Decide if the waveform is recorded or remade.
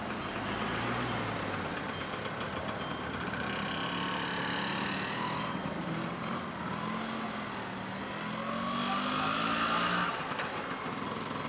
recorded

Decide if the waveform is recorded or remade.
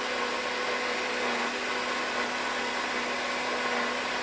recorded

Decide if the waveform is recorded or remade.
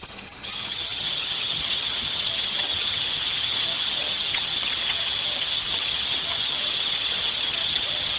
remade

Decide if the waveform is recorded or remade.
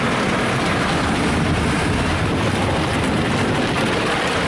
recorded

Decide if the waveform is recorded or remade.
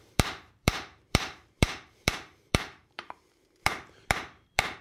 remade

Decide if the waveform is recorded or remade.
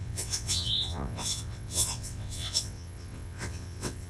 remade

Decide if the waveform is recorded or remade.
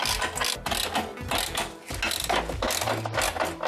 recorded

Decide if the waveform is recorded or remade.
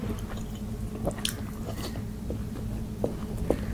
recorded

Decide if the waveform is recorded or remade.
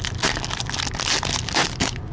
recorded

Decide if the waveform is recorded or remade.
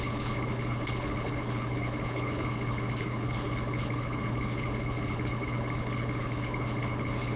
remade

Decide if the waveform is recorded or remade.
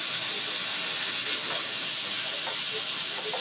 recorded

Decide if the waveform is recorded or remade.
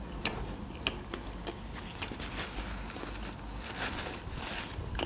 recorded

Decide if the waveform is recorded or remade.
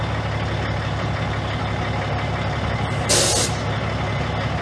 recorded